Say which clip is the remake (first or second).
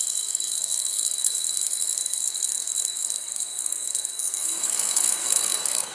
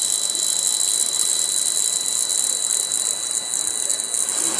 first